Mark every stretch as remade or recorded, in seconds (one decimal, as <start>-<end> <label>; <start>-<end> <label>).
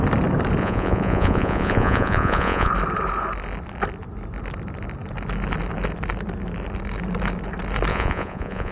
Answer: 0.0-0.6 recorded; 0.6-2.7 remade; 2.7-7.9 recorded; 7.9-8.7 remade